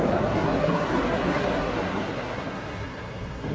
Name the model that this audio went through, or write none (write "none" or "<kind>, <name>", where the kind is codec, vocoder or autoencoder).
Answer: codec, SNAC